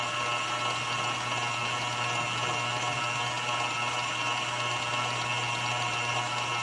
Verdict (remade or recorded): recorded